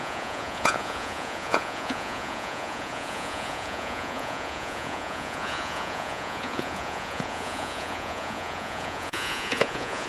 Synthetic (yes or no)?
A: yes